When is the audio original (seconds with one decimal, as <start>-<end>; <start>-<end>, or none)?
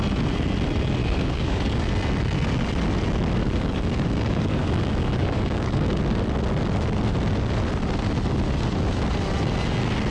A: 0.0-1.0; 1.9-3.4; 6.0-10.1